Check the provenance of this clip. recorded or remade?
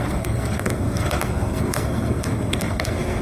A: remade